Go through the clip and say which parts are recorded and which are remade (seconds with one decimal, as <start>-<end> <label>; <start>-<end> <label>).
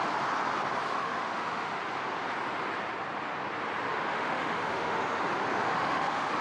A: 0.0-1.0 recorded; 1.0-1.8 remade; 1.8-3.9 recorded; 3.9-5.0 remade; 5.0-5.7 recorded; 5.7-6.4 remade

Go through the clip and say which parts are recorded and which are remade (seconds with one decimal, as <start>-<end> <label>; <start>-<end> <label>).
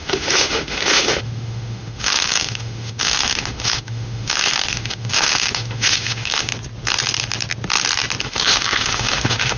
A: 0.0-6.5 remade; 6.5-8.2 recorded; 8.2-9.6 remade